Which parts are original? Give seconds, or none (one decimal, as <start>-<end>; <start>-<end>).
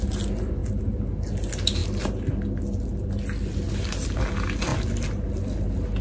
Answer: 0.0-6.0